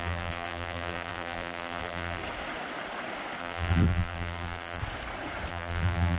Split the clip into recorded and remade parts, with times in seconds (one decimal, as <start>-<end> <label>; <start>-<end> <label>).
0.0-2.2 remade; 2.2-3.4 recorded; 3.4-4.8 remade; 4.8-5.5 recorded; 5.5-6.2 remade